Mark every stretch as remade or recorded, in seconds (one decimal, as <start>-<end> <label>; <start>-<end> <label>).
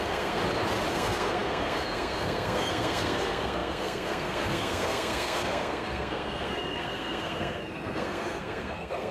0.0-0.4 remade; 0.4-0.9 recorded; 0.9-9.1 remade